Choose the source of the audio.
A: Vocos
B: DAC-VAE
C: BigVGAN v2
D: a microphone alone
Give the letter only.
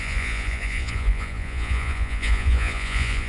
A